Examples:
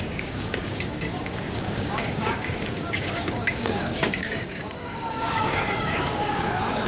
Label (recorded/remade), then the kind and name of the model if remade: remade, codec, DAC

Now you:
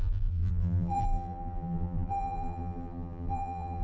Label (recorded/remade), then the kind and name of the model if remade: remade, vocoder, BigVGAN v2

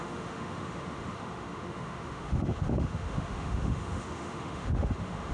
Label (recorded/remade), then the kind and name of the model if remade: remade, autoencoder, DAC-VAE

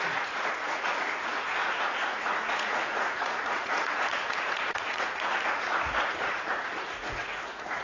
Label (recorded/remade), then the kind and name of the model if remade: remade, vocoder, Vocos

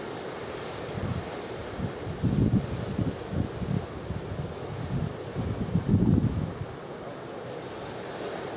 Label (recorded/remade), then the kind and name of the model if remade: recorded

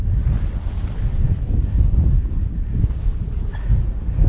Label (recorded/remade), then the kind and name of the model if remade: recorded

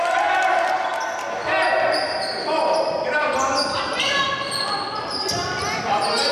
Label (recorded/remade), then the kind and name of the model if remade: recorded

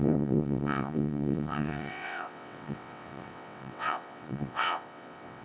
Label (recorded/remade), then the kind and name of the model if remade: remade, vocoder, WaveNeXt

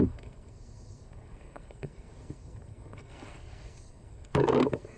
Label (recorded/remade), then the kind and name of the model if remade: remade, codec, SNAC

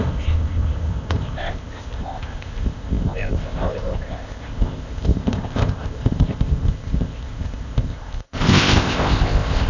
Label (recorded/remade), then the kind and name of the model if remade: remade, codec, ZipCodec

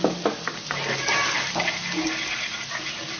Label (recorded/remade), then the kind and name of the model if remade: recorded